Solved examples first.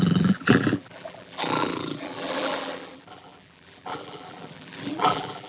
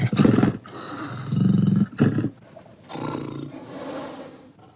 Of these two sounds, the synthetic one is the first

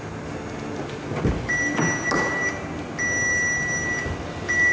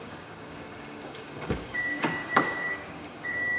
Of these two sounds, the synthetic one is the second